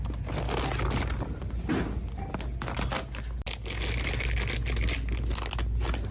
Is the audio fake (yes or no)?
no